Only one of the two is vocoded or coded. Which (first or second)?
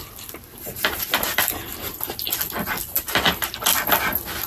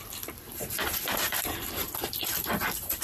second